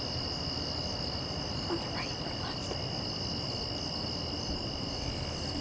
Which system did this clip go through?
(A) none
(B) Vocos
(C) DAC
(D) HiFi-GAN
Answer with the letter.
A